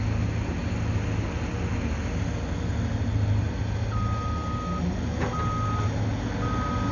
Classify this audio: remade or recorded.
recorded